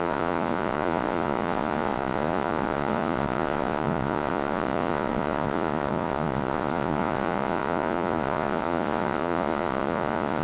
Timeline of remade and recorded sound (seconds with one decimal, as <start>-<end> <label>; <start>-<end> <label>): 0.0-10.4 remade